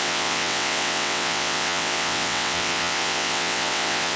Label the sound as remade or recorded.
remade